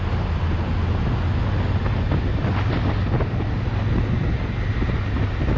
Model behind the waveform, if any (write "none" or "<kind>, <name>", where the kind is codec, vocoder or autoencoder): none